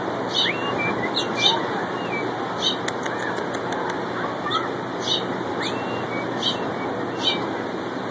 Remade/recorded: recorded